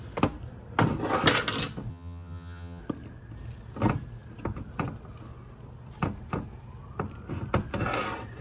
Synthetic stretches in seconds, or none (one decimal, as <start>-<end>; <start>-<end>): 1.9-2.8